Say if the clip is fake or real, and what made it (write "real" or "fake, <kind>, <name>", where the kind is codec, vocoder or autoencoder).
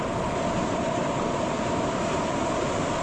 real